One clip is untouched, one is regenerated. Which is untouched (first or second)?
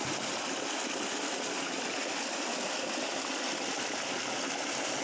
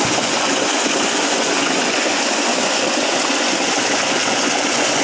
first